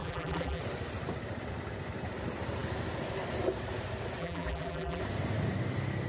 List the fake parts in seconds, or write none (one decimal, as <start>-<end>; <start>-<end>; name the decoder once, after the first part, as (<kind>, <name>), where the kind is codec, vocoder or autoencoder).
0.0-0.6 (vocoder, BigVGAN v2); 4.2-5.0